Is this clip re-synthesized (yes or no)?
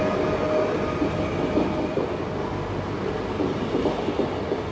no